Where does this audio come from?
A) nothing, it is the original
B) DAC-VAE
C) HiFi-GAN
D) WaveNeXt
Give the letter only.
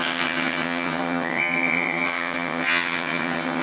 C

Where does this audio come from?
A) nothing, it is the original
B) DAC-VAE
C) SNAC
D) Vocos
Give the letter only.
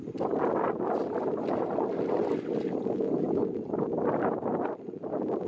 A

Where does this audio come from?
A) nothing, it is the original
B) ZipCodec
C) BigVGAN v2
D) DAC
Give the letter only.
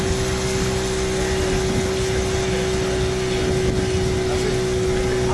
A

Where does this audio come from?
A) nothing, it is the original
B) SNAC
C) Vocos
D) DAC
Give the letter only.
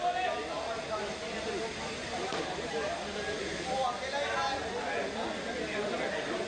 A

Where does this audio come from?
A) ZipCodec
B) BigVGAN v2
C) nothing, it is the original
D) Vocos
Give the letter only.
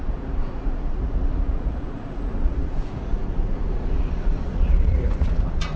D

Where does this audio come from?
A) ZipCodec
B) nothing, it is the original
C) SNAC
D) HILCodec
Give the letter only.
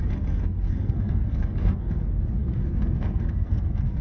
C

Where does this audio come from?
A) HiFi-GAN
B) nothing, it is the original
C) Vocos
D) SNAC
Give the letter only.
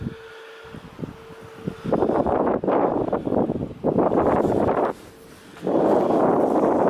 B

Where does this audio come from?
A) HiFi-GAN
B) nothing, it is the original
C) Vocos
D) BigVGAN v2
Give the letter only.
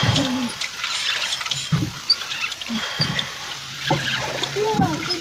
D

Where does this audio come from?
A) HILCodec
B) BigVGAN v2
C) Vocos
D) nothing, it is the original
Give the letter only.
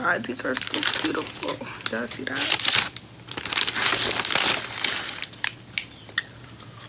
D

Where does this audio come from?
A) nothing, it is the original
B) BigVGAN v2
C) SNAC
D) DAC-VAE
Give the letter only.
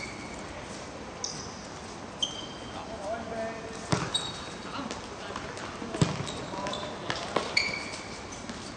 A